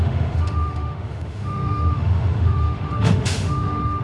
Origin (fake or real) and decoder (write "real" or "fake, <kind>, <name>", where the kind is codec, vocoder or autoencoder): fake, autoencoder, DAC-VAE